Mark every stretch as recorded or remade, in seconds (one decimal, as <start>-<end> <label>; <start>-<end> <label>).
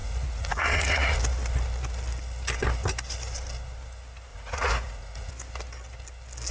0.0-1.2 remade; 1.2-4.3 recorded; 4.3-5.3 remade; 5.3-6.5 recorded